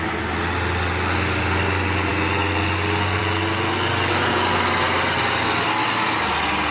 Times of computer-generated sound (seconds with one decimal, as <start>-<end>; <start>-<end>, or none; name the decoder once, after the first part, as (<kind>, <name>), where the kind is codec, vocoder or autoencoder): none